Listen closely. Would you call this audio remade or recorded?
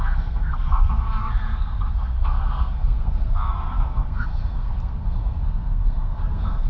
remade